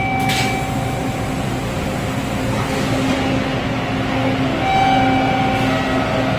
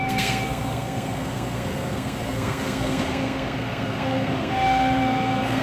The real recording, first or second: first